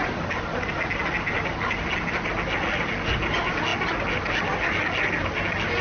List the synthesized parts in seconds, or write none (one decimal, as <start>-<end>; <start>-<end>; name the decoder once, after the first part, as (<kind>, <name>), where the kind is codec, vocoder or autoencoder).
none